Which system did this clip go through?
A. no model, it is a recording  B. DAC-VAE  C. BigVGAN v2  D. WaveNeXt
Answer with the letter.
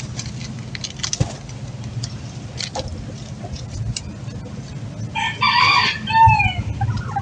A